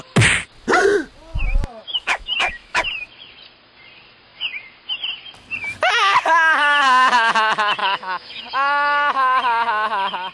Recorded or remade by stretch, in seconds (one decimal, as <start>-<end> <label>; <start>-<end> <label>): 0.0-1.8 recorded; 1.8-2.8 remade; 2.8-7.8 recorded; 7.8-8.4 remade; 8.4-10.3 recorded